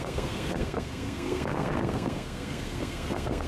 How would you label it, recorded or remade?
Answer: remade